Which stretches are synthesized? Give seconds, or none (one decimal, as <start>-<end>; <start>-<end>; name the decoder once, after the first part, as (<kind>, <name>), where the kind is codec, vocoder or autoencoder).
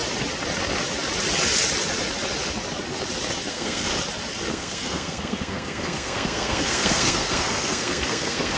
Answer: 3.5-3.9 (codec, SNAC); 4.5-8.6